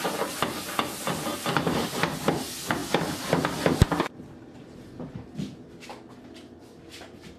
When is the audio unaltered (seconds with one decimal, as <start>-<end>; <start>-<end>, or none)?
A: 0.0-7.4